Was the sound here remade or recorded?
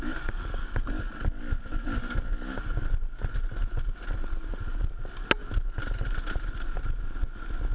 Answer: recorded